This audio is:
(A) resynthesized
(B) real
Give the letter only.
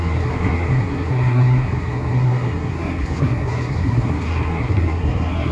A